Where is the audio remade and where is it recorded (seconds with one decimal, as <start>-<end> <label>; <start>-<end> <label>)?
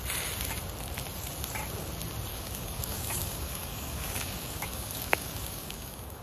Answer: 0.0-2.3 recorded; 2.3-6.2 remade